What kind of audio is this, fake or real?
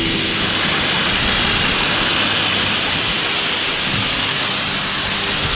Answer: real